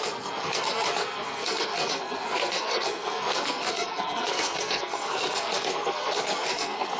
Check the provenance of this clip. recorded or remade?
remade